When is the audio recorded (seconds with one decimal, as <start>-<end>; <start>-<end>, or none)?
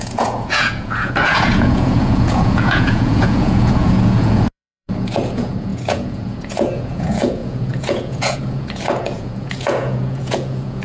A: none